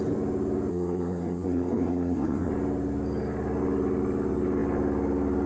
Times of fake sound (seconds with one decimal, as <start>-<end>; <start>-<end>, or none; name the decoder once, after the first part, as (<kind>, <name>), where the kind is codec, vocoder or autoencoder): 0.7-2.5 (codec, SNAC)